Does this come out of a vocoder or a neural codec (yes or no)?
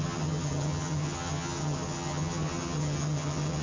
yes